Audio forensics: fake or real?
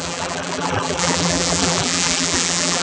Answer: fake